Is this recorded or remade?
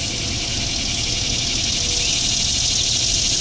recorded